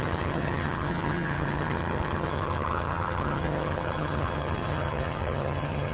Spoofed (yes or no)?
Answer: yes